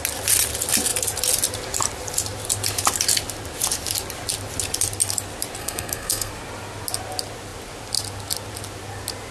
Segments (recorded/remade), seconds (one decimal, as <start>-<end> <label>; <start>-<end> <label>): 0.0-5.6 recorded; 5.6-6.3 remade; 6.3-9.3 recorded